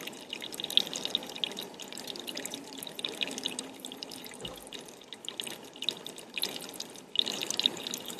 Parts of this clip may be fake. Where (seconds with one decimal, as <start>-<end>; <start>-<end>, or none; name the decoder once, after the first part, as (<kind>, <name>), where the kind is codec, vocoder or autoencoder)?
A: none